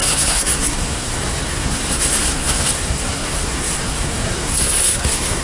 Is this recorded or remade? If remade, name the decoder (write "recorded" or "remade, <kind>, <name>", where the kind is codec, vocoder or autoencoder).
remade, codec, SNAC